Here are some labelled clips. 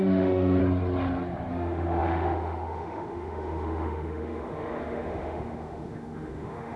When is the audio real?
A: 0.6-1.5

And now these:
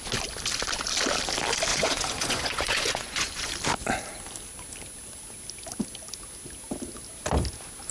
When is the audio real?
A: 0.0-1.7; 3.5-7.9

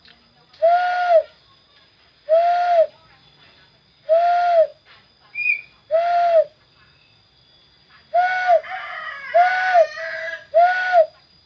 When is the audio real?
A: 0.0-11.5

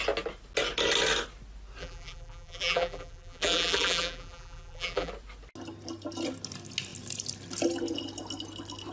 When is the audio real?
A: 0.0-1.8; 5.1-8.9